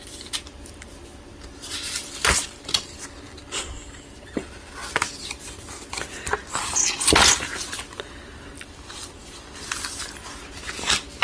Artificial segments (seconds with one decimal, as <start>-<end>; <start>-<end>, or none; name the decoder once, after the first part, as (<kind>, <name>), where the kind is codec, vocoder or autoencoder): none